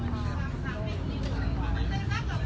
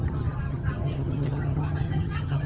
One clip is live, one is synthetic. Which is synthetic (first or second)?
second